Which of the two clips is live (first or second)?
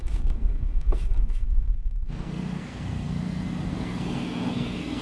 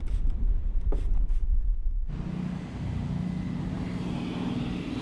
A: second